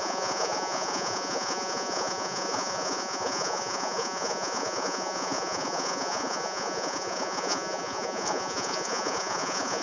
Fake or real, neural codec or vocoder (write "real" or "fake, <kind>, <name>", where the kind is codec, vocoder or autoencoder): fake, vocoder, Vocos